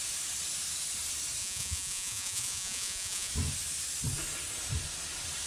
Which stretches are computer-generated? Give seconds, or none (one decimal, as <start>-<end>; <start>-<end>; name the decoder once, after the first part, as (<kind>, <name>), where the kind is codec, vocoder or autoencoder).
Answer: 1.4-3.3 (vocoder, Vocos)